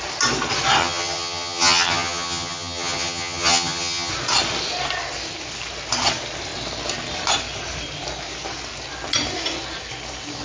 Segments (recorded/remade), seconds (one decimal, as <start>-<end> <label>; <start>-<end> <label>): 0.0-0.8 recorded; 0.8-4.1 remade; 4.1-10.4 recorded